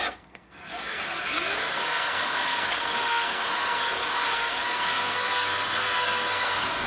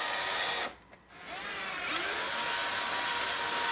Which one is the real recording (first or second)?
second